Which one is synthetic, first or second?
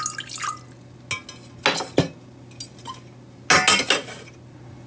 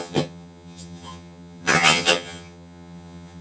second